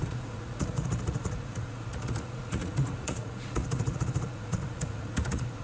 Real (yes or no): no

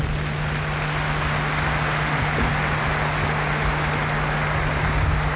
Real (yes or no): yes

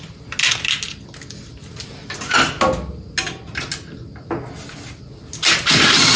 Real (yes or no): yes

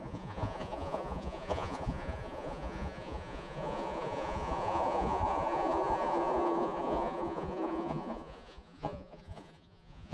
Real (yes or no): no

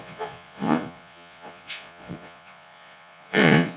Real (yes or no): no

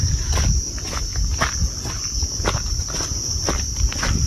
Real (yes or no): yes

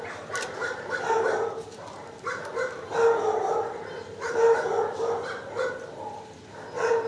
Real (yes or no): yes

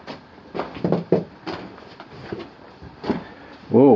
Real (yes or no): yes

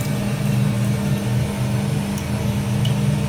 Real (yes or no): yes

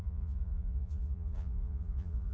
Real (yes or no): no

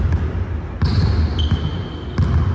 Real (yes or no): yes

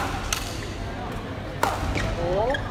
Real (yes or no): yes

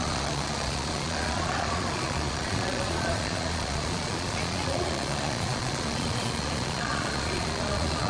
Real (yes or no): no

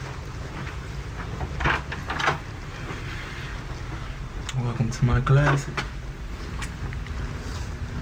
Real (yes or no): yes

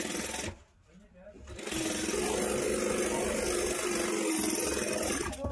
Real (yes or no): yes